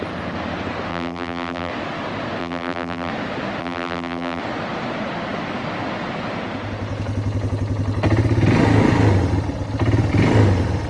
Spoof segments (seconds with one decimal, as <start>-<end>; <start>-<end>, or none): 0.9-1.7; 2.4-3.1; 3.6-4.4